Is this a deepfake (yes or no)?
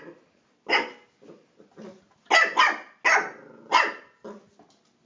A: no